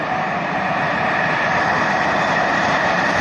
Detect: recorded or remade remade